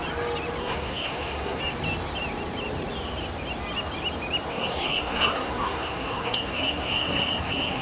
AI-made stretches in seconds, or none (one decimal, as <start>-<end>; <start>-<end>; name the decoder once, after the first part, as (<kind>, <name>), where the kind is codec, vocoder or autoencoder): 0.6-1.6 (codec, SNAC); 4.5-7.8